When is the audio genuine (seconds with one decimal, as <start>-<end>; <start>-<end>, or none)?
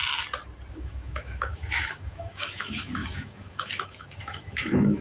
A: 0.0-0.7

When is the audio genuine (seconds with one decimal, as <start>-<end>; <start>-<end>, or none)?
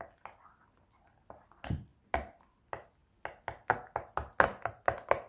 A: 0.0-5.3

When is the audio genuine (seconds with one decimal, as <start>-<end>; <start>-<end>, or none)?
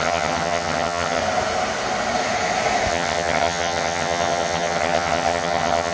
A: 1.2-2.9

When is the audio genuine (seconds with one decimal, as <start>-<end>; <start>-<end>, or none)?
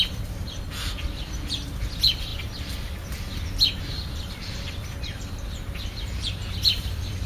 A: 2.3-3.8